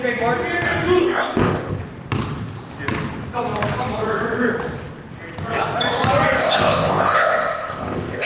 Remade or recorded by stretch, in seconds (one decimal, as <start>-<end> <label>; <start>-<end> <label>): 0.0-1.0 recorded; 1.0-1.8 remade; 1.8-6.4 recorded; 6.4-8.3 remade